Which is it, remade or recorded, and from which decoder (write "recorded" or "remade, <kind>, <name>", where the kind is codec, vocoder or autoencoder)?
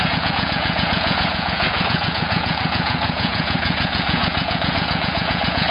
remade, vocoder, Vocos